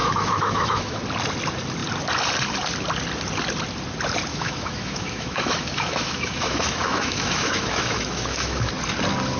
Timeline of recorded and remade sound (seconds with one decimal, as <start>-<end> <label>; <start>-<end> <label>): 0.0-1.0 remade; 1.0-4.3 recorded; 4.3-8.7 remade; 8.7-9.4 recorded